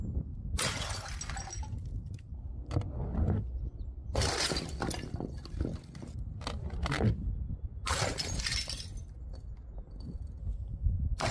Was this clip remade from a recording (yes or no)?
no